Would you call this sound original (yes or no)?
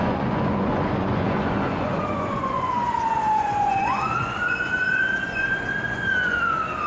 no